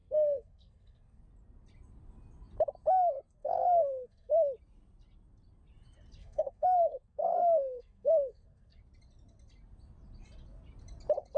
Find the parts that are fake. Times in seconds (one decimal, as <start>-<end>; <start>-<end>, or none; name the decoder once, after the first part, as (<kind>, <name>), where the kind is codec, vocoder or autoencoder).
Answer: 0.0-1.2 (codec, SNAC); 3.4-4.3; 6.2-8.8